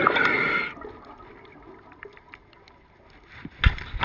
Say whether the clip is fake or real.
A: real